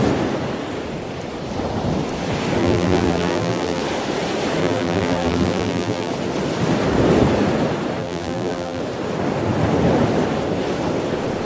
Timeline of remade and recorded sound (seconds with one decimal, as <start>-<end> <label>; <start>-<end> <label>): 0.0-2.6 recorded; 2.6-3.8 remade; 3.8-4.6 recorded; 4.6-6.1 remade; 6.1-8.0 recorded; 8.0-8.8 remade; 8.8-11.4 recorded